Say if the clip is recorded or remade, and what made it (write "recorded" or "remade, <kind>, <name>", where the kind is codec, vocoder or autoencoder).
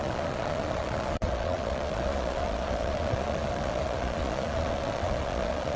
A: remade, vocoder, Vocos